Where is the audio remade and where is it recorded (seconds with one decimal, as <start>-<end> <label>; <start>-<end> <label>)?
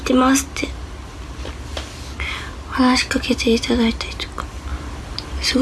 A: 0.0-5.6 recorded